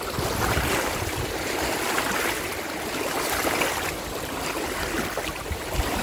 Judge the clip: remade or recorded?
recorded